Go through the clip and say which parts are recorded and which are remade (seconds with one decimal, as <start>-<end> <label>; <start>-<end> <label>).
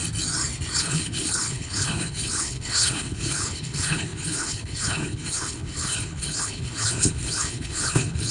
0.0-0.8 recorded; 0.8-8.3 remade